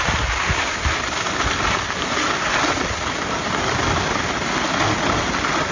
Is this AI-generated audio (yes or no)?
no